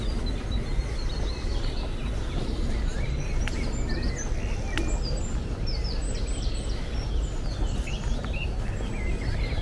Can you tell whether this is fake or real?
real